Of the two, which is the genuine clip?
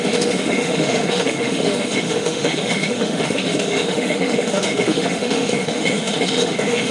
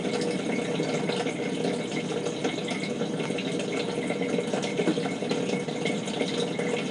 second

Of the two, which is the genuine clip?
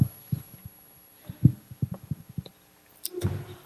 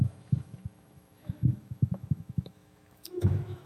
first